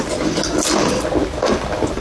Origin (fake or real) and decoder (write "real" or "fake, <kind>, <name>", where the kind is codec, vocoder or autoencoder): real